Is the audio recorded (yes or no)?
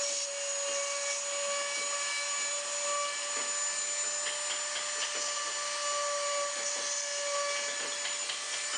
yes